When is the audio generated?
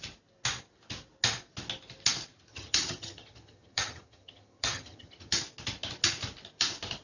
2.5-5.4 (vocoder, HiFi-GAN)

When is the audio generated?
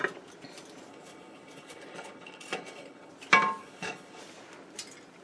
0.9-3.1 (codec, HILCodec); 3.6-4.2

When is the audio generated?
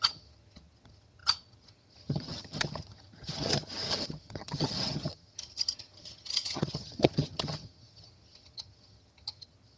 0.0-9.8 (vocoder, HiFi-GAN)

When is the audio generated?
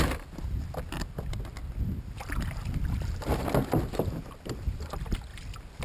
none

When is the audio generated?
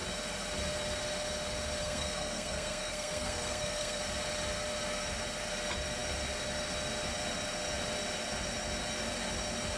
1.8-4.0 (codec, SNAC)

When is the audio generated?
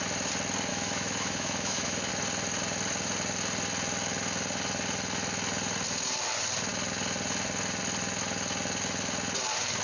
0.7-2.1 (autoencoder, DAC-VAE)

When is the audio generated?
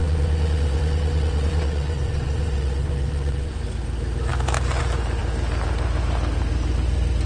0.0-3.6 (vocoder, WaveNeXt)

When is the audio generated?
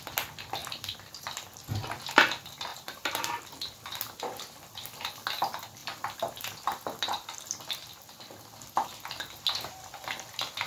0.6-1.3 (vocoder, BigVGAN v2); 2.7-3.2; 5.8-6.4